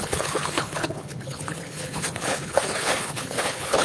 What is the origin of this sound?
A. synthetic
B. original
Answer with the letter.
A